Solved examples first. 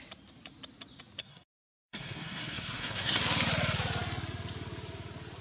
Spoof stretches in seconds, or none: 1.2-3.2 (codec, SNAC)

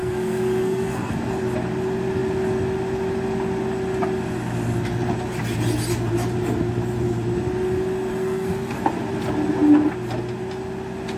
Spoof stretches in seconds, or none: 0.0-1.1 (codec, SNAC); 8.1-8.8

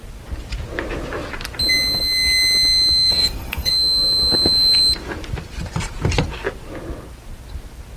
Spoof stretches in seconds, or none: 3.1-3.7 (codec, SNAC)

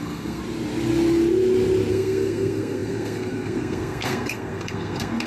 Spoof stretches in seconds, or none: 0.0-0.4 (codec, SNAC); 1.9-5.3